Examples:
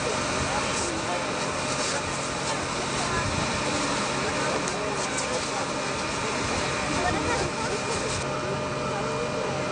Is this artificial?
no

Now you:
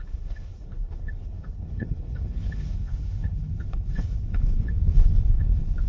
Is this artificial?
yes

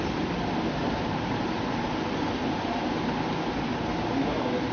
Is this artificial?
no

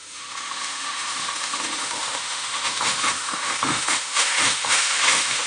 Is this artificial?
yes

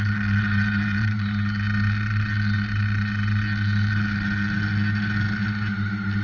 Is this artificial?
no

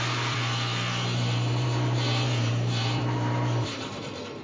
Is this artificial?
yes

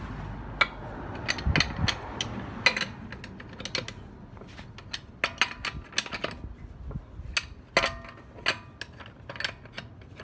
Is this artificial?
no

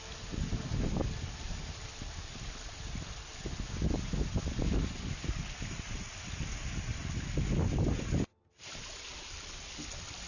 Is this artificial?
no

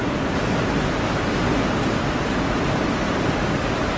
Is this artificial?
yes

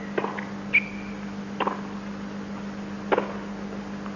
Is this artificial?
no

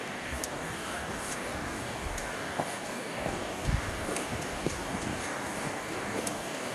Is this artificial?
yes